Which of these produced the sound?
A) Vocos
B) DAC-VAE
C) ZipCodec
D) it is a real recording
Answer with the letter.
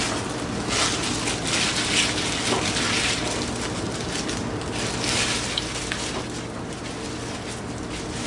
D